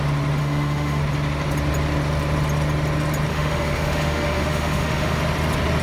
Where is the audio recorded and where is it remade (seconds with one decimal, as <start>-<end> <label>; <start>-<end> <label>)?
0.0-0.4 recorded; 0.4-1.0 remade; 1.0-3.3 recorded; 3.3-5.2 remade; 5.2-5.8 recorded